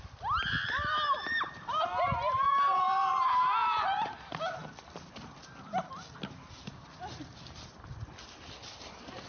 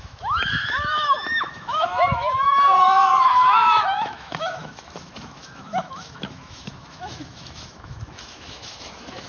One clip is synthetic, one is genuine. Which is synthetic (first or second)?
second